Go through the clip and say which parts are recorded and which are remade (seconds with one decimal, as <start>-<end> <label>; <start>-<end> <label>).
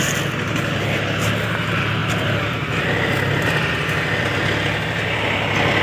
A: 0.0-5.8 recorded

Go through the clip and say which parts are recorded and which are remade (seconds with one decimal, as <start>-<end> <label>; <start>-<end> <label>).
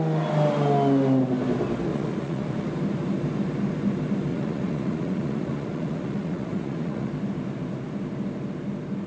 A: 0.0-1.9 recorded; 1.9-2.7 remade; 2.7-4.3 recorded; 4.3-7.1 remade; 7.1-9.1 recorded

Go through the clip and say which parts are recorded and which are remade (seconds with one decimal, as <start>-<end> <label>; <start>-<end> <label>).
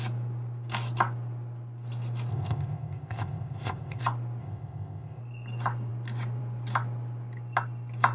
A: 0.0-2.3 recorded; 2.3-4.0 remade; 4.0-4.4 recorded; 4.4-5.2 remade; 5.2-8.1 recorded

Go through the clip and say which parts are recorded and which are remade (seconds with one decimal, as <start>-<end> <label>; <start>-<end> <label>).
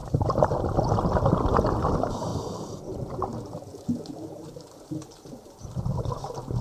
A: 0.0-0.6 remade; 0.6-2.3 recorded; 2.3-2.8 remade; 2.8-6.6 recorded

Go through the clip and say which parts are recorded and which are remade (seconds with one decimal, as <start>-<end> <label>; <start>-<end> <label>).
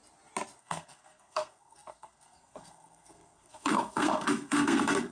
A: 0.0-0.6 recorded; 0.6-5.1 remade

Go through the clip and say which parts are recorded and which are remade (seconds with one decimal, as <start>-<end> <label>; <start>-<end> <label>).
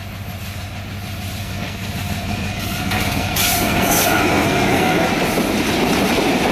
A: 0.0-1.4 recorded; 1.4-5.1 remade; 5.1-6.5 recorded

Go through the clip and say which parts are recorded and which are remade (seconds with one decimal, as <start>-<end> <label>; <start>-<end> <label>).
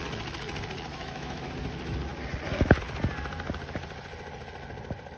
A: 0.0-0.9 recorded; 0.9-1.5 remade; 1.5-5.2 recorded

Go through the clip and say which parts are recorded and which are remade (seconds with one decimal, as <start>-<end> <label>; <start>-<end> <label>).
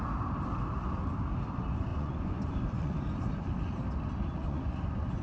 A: 0.0-1.9 recorded; 1.9-3.0 remade; 3.0-4.4 recorded; 4.4-5.2 remade